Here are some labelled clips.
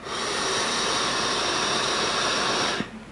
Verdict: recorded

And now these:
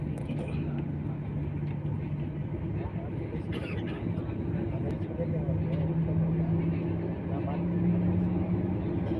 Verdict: recorded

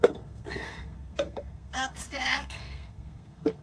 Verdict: remade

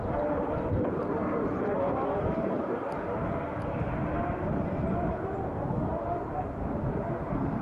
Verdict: remade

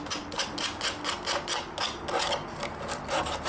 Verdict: recorded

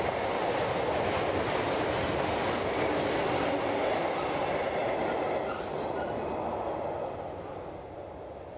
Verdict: recorded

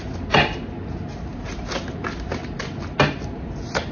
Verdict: recorded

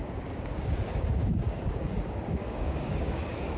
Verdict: remade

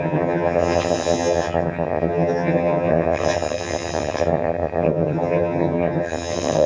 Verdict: remade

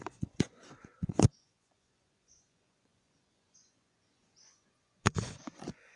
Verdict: remade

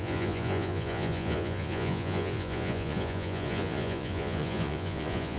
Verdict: remade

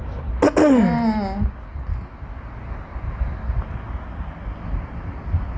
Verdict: recorded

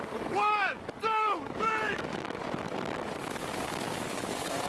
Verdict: remade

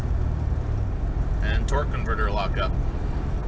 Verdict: recorded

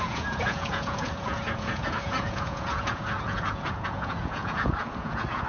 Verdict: remade